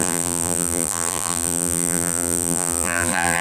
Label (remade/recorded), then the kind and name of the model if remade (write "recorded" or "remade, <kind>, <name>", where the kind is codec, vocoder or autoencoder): remade, vocoder, BigVGAN v2